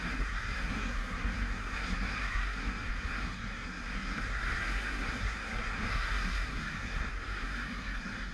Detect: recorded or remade remade